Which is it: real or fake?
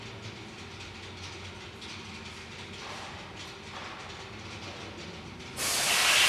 real